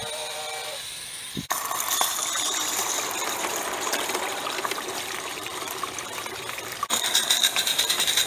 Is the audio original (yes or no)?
no